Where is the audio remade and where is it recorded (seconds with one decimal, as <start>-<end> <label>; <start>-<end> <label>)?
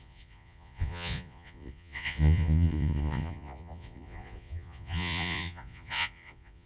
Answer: 0.0-6.7 remade